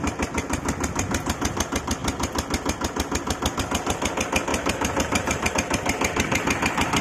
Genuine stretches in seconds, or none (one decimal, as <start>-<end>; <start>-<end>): 0.0-4.5; 5.5-7.0